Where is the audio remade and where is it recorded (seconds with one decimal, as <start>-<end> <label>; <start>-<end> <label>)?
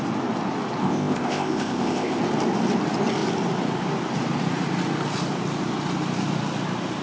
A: 0.0-0.8 recorded; 0.8-2.2 remade; 2.2-7.0 recorded